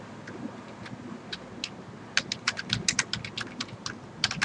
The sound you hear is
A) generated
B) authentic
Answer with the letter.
B